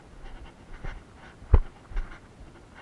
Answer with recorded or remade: recorded